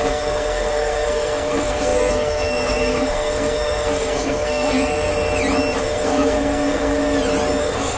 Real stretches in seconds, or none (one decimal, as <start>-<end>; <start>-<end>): 5.1-5.8; 7.0-7.6